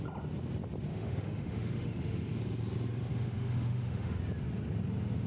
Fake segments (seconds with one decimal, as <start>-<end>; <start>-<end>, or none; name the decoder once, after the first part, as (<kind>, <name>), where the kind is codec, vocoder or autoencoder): 0.9-2.4 (autoencoder, DAC-VAE); 3.1-4.2